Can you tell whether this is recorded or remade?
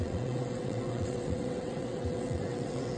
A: remade